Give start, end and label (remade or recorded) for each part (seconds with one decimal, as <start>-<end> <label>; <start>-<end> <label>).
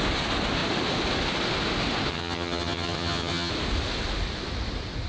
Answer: 0.0-2.1 recorded; 2.1-3.5 remade; 3.5-5.1 recorded